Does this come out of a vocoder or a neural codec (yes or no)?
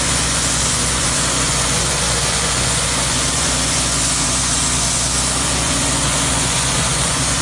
yes